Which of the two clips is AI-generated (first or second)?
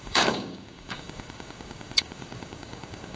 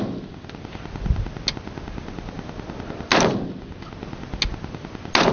first